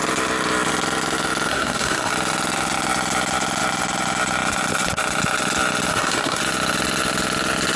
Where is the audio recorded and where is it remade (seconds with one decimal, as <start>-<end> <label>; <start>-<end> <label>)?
0.0-1.5 recorded; 1.5-2.1 remade; 2.1-5.9 recorded; 5.9-6.4 remade; 6.4-7.8 recorded